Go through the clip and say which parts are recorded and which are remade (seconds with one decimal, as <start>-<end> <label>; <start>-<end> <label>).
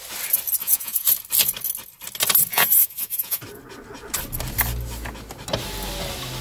0.0-0.6 recorded; 0.6-1.1 remade; 1.1-2.5 recorded; 2.5-3.4 remade; 3.4-6.4 recorded